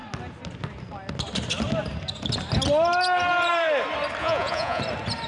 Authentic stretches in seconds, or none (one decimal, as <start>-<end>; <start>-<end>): 0.0-4.2; 4.8-5.3